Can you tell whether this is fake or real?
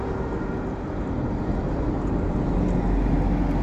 real